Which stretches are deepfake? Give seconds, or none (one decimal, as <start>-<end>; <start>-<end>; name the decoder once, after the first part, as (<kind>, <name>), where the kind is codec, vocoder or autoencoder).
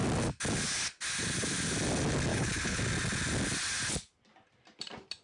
2.3-2.8 (codec, HILCodec)